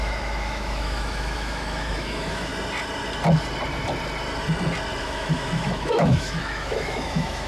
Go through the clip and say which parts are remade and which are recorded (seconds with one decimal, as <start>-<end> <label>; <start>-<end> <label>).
0.0-2.5 remade; 2.5-5.0 recorded; 5.0-7.5 remade